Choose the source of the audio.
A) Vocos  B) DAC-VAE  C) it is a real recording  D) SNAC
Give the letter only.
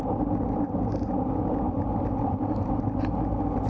C